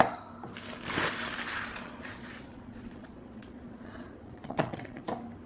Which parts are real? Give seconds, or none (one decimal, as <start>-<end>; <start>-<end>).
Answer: 0.0-1.7; 5.0-5.5